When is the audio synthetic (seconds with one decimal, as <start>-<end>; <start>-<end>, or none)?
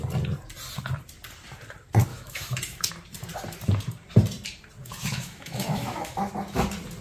2.1-2.9; 4.8-6.3